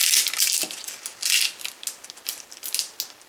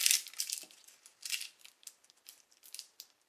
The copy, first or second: second